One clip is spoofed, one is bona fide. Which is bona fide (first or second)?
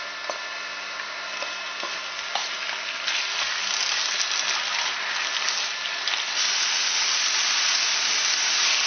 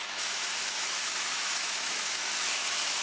first